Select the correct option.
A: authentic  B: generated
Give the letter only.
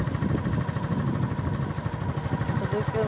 A